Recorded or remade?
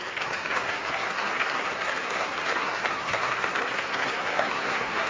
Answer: remade